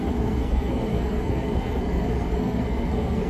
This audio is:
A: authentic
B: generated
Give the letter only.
B